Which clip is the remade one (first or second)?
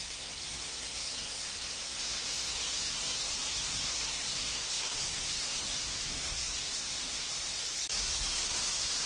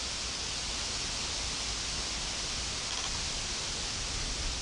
first